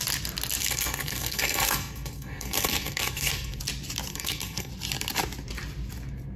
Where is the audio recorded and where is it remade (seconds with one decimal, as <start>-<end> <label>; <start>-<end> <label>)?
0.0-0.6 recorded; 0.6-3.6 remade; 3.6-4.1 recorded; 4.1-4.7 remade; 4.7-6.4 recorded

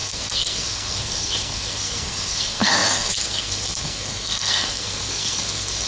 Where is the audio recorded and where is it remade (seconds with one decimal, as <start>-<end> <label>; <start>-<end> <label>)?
0.0-5.9 remade

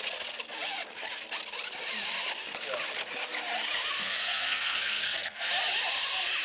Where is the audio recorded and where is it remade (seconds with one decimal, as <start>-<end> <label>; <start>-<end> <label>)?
0.0-4.0 recorded; 4.0-5.5 remade; 5.5-6.4 recorded

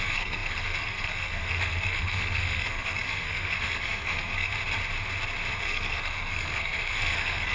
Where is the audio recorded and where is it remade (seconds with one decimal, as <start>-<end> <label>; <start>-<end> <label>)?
0.0-4.5 remade; 4.5-5.6 recorded; 5.6-7.5 remade

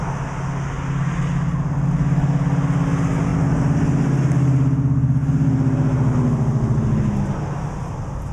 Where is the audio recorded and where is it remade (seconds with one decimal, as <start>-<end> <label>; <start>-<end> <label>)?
0.0-8.3 recorded

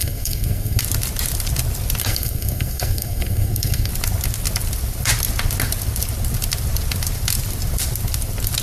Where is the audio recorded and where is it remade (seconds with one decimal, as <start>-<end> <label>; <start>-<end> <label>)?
0.0-0.8 remade; 0.8-2.0 recorded; 2.0-3.9 remade; 3.9-8.6 recorded

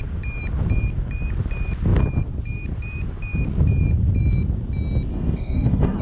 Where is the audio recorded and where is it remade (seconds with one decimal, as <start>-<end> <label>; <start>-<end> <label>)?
0.0-5.1 recorded; 5.1-6.0 remade

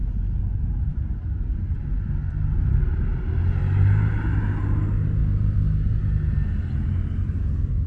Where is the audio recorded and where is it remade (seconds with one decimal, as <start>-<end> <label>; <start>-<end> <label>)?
0.0-7.9 recorded